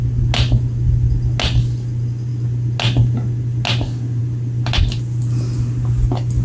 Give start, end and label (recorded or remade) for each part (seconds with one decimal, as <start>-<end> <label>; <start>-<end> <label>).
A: 0.0-6.4 recorded